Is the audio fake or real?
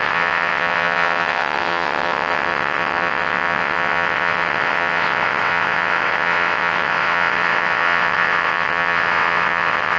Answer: fake